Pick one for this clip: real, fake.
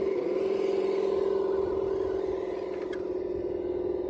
real